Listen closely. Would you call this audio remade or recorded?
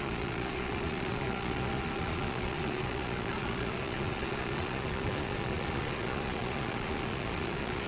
remade